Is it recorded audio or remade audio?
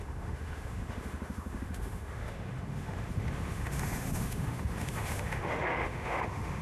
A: remade